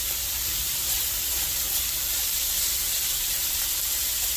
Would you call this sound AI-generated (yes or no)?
no